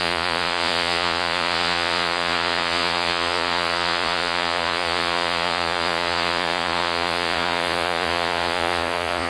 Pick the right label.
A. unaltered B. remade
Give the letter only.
B